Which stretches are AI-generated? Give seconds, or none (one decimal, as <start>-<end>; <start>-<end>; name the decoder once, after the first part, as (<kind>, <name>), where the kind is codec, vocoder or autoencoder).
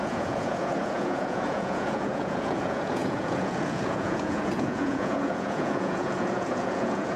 0.0-7.2 (vocoder, Vocos)